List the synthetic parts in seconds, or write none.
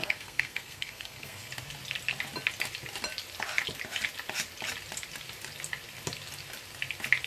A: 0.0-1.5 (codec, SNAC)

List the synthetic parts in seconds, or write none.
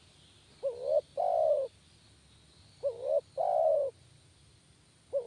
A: none